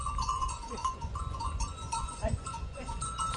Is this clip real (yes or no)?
no